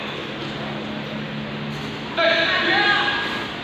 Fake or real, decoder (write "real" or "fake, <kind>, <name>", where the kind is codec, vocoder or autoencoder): real